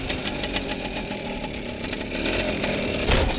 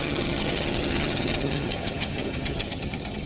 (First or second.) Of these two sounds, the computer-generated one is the second